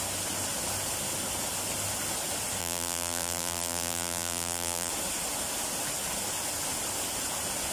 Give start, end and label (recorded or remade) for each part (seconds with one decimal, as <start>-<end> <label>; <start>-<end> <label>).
0.0-2.6 recorded; 2.6-4.9 remade; 4.9-7.7 recorded